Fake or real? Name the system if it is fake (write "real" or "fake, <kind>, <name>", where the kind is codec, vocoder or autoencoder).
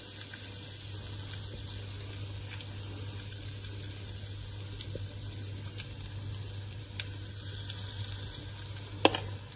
real